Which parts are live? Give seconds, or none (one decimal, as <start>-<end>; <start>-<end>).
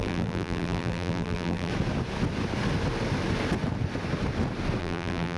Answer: 1.7-4.8